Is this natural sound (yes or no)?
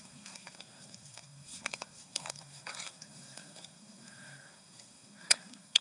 no